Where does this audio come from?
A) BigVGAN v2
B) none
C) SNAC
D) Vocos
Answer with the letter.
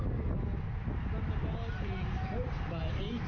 B